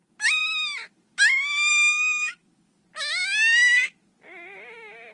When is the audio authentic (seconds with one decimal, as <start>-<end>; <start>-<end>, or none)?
0.0-1.7; 2.8-5.1